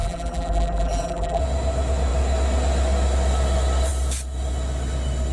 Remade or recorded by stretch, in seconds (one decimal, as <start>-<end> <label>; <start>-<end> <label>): 0.0-1.4 remade; 1.4-5.3 recorded

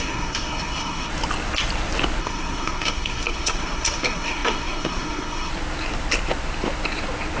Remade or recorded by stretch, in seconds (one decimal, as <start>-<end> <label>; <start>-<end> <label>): 0.0-1.1 remade; 1.1-2.2 recorded; 2.2-5.5 remade; 5.5-7.4 recorded

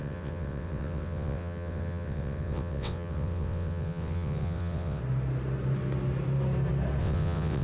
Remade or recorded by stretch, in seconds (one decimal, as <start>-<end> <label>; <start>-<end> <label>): 0.0-5.0 remade; 5.0-7.0 recorded; 7.0-7.6 remade

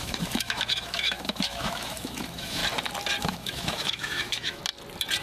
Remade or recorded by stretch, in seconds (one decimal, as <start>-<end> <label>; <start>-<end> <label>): 0.0-2.6 remade; 2.6-3.2 recorded; 3.2-4.6 remade; 4.6-5.2 recorded

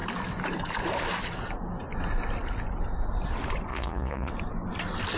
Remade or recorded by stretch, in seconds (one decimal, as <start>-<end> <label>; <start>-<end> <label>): 0.0-3.7 recorded; 3.7-4.3 remade; 4.3-5.2 recorded

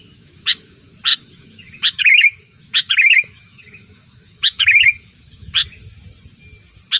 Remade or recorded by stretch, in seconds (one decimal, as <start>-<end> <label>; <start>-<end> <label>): 0.0-5.6 remade; 5.6-7.0 recorded

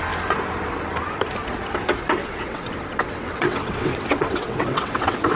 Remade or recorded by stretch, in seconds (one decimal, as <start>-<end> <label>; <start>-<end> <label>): 0.0-2.2 recorded; 2.2-5.4 remade

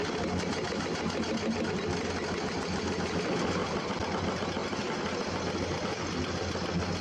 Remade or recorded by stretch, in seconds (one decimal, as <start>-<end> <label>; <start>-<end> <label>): 0.0-7.0 recorded